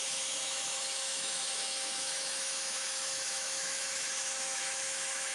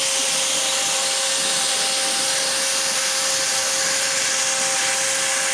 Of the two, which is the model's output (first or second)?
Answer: first